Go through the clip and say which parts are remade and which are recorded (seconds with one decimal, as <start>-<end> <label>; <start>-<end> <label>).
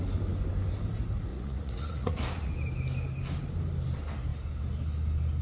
0.0-1.3 recorded; 1.3-2.5 remade; 2.5-5.4 recorded